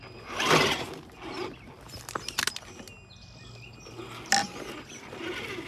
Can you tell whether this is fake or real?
real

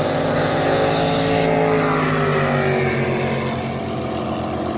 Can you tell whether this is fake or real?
real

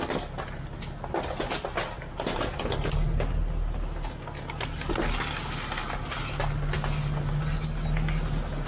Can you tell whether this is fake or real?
real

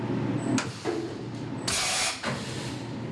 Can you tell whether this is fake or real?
real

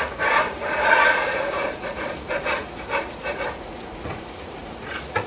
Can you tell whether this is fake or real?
fake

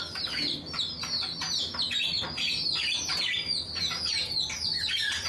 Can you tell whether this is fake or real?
real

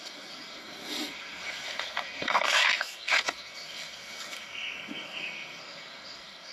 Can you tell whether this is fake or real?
fake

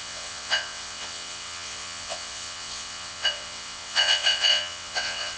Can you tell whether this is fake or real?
fake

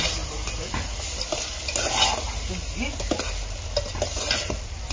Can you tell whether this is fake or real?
real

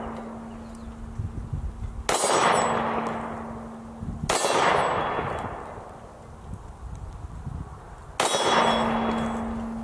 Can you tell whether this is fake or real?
real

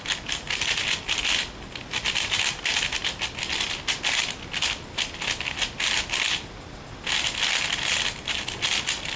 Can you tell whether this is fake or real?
real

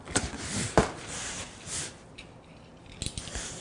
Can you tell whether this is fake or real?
real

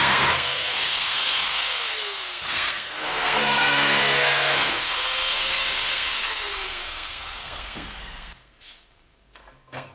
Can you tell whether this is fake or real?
fake